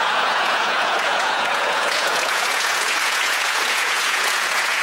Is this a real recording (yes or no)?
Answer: no